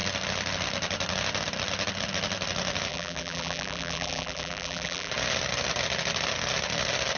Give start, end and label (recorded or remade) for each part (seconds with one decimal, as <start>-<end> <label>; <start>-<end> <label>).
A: 0.0-2.9 recorded; 2.9-5.1 remade; 5.1-7.2 recorded